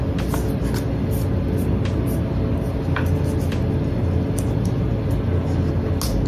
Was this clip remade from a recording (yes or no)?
no